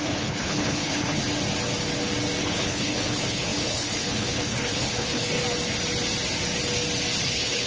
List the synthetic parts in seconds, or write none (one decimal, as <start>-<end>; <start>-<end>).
0.0-1.2; 2.4-5.4; 7.3-7.7